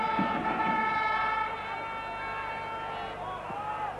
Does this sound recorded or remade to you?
recorded